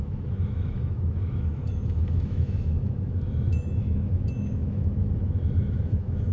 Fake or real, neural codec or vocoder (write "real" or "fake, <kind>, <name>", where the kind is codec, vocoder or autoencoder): fake, autoencoder, DAC-VAE